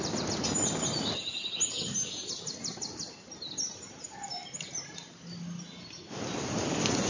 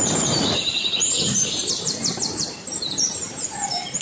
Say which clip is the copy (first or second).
second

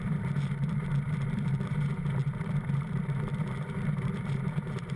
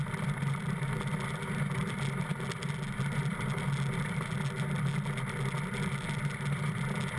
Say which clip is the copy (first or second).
first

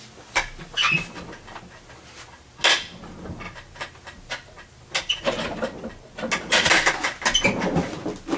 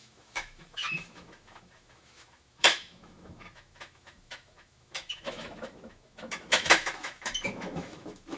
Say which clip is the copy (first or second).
second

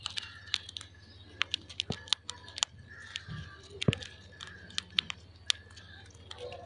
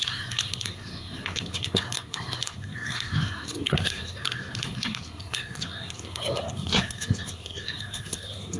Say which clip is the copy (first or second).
second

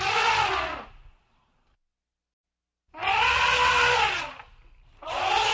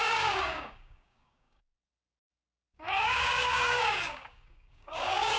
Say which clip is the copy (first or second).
second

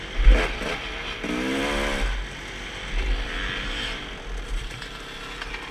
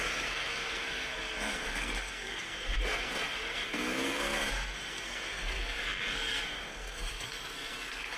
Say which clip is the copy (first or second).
second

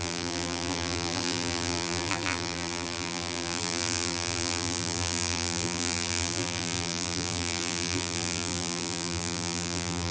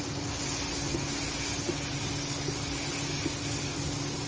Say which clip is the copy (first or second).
first